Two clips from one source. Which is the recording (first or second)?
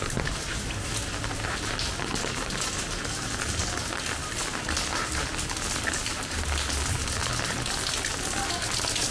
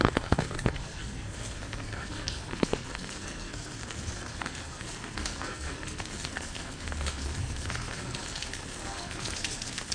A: first